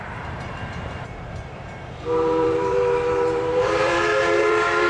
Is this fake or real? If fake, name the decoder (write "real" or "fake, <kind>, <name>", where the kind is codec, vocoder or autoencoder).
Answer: fake, vocoder, BigVGAN v2